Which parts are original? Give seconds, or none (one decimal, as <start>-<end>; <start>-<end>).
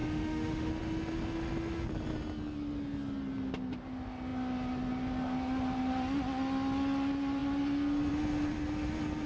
0.7-9.3